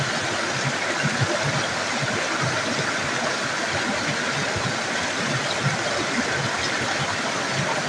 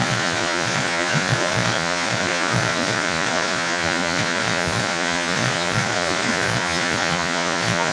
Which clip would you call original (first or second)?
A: first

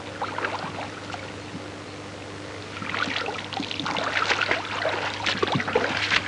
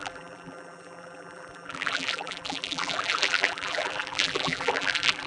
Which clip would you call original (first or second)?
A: first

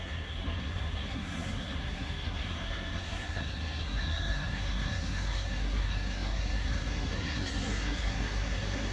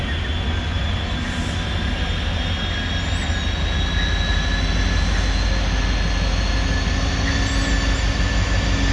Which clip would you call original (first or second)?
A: second